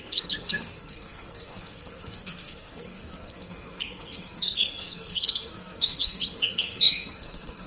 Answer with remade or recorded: remade